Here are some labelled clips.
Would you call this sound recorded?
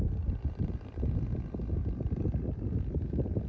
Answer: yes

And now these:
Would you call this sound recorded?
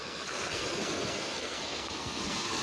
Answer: no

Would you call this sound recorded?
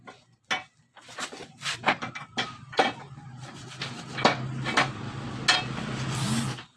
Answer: yes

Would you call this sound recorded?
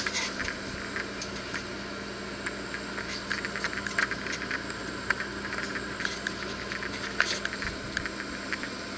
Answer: yes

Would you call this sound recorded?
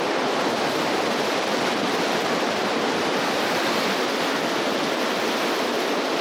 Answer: yes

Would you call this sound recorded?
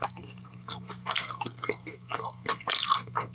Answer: no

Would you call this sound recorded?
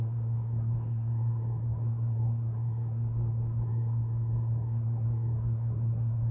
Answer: no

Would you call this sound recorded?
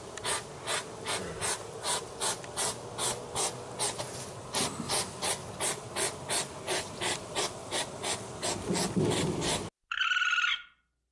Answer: yes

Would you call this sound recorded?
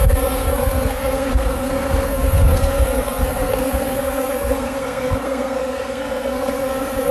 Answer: no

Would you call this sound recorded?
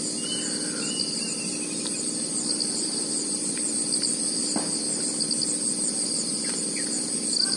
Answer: yes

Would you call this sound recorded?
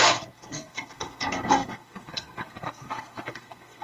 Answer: no